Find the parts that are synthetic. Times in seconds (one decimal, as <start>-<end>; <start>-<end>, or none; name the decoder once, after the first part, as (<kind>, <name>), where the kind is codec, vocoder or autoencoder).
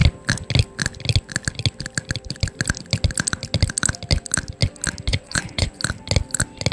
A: 5.1-5.8 (vocoder, Vocos)